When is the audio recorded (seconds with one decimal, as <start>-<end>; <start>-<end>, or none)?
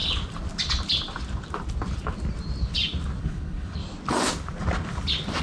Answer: 0.0-3.2; 3.8-5.4